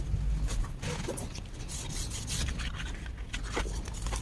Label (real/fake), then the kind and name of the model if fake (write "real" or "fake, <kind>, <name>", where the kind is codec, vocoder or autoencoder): real